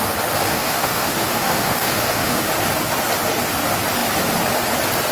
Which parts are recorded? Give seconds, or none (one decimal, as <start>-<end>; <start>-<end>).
0.0-0.5; 2.5-5.1